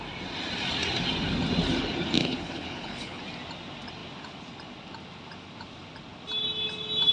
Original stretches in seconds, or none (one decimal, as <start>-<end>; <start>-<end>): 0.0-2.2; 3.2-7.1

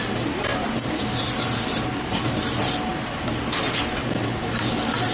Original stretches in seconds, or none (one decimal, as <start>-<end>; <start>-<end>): 0.0-5.1

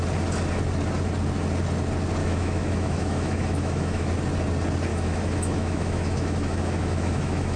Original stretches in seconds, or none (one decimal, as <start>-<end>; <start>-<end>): 0.0-2.2; 4.1-4.9